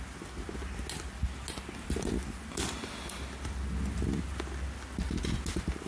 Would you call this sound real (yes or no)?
yes